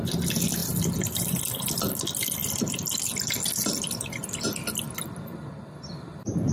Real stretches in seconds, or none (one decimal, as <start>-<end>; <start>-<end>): 0.0-0.6; 1.8-2.4; 3.3-6.5